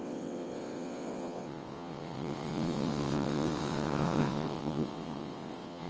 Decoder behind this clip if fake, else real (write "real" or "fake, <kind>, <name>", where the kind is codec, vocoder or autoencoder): fake, vocoder, WaveNeXt